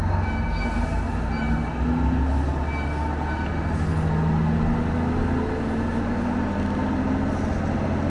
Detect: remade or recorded recorded